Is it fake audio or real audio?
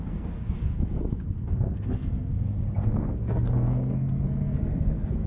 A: fake